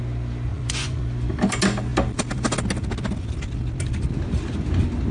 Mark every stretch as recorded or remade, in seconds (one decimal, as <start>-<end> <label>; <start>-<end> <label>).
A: 0.0-0.5 recorded; 0.5-1.0 remade; 1.0-5.1 recorded